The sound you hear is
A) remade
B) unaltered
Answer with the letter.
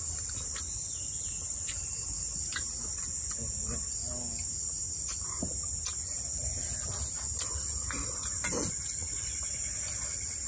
B